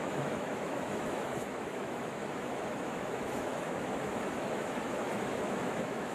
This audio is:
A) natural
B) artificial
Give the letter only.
B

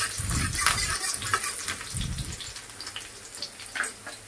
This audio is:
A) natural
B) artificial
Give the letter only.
A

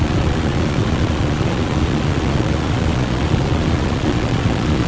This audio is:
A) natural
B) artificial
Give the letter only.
B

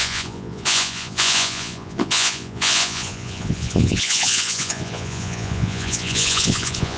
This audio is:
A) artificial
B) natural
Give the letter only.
A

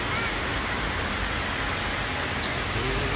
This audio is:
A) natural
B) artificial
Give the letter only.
A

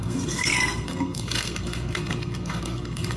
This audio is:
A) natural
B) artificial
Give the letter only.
B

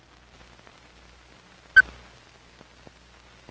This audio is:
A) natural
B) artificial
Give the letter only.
A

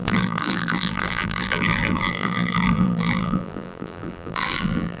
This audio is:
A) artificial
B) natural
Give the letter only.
A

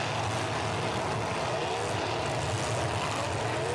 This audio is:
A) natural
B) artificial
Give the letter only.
A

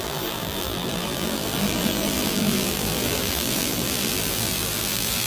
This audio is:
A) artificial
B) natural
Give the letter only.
A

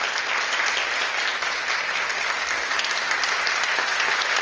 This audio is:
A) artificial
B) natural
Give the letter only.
B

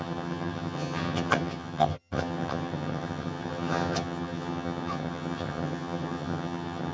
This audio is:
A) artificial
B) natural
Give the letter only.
A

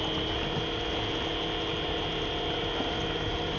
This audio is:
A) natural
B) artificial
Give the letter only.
A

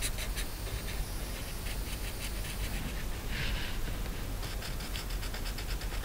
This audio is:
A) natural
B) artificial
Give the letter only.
A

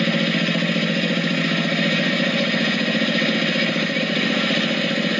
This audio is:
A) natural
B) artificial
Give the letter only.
A